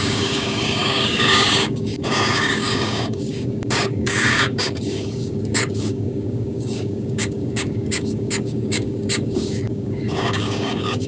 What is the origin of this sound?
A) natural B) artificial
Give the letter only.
B